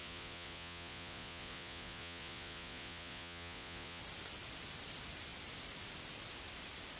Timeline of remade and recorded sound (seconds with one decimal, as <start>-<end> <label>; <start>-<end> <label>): 0.0-4.0 remade; 4.0-7.0 recorded